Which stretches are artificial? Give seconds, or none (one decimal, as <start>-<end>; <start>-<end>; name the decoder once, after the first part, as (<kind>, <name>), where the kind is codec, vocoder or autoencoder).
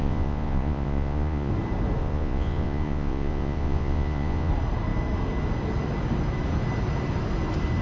0.0-1.5 (vocoder, Vocos); 2.0-4.5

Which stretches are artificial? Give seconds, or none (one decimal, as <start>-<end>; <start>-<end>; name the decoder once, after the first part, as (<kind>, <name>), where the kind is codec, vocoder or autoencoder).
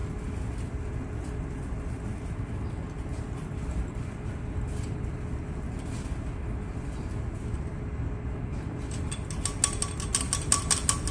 none